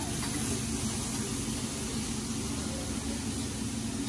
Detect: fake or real real